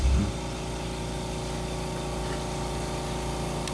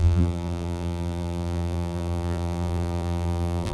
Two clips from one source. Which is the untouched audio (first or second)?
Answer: first